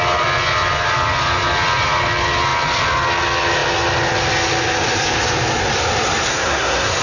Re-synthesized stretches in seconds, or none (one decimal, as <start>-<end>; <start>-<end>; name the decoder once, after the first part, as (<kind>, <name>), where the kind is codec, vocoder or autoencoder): 6.3-7.0 (codec, SNAC)